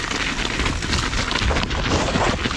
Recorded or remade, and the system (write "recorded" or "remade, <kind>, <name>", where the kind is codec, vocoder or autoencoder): recorded